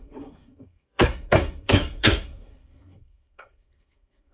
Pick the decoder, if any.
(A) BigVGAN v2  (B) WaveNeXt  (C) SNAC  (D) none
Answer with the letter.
C